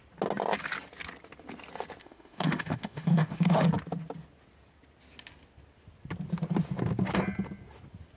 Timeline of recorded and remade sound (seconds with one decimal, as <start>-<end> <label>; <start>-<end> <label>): 0.0-2.0 recorded; 2.0-3.7 remade; 3.7-8.2 recorded

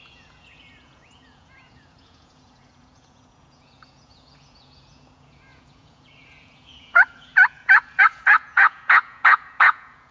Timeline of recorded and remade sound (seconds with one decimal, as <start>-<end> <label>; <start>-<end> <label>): 0.0-10.1 remade

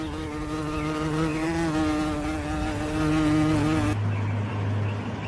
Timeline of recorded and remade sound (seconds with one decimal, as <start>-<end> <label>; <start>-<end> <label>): 0.0-5.3 recorded

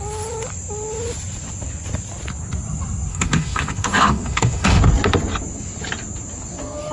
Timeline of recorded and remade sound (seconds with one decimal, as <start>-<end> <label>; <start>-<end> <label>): 0.0-3.1 recorded; 3.1-4.8 remade; 4.8-6.9 recorded

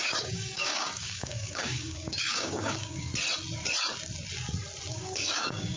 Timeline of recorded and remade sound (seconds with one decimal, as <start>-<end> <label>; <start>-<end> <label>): 0.0-3.1 remade; 3.1-4.9 recorded; 4.9-5.8 remade

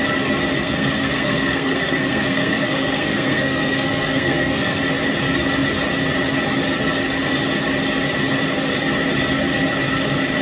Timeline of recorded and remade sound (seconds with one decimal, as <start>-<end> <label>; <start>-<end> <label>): 0.0-0.6 recorded; 0.6-4.8 remade; 4.8-10.4 recorded

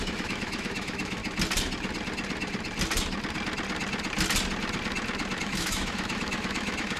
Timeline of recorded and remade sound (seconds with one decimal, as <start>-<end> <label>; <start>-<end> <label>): 0.0-1.2 remade; 1.2-5.4 recorded; 5.4-7.0 remade

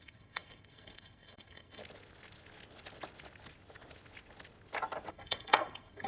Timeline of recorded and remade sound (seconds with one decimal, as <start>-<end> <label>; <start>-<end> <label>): 0.0-1.8 remade; 1.8-5.1 recorded; 5.1-6.1 remade